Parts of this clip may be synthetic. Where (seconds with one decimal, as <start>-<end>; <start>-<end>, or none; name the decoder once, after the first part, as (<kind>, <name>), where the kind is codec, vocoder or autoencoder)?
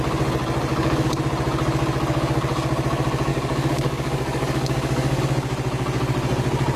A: 0.7-1.2 (codec, DAC); 3.3-5.2